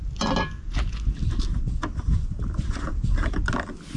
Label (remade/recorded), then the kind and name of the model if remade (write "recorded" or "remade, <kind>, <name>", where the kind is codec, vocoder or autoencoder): recorded